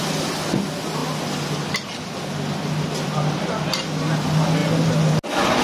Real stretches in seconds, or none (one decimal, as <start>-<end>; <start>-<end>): 0.0-5.6

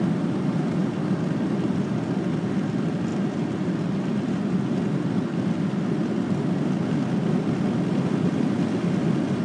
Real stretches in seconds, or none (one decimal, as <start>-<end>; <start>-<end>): 0.0-9.4